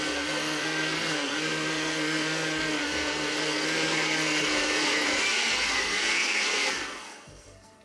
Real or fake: fake